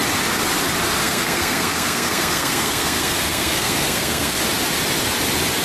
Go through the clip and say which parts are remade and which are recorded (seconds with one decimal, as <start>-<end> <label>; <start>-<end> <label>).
0.0-1.0 recorded; 1.0-4.4 remade; 4.4-5.6 recorded